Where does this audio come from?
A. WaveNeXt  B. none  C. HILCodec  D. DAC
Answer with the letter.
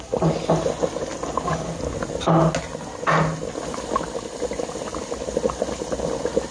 B